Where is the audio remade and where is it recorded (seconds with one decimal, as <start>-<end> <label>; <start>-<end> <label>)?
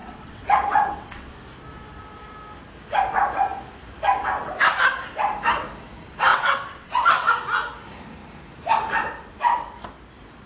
0.0-1.3 remade; 1.3-6.3 recorded; 6.3-7.3 remade; 7.3-10.5 recorded